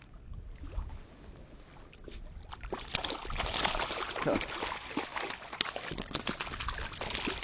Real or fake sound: real